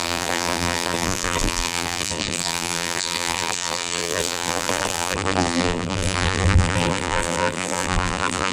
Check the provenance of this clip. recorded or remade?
remade